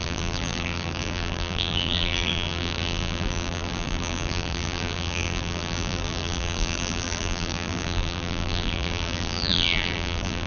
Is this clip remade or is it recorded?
remade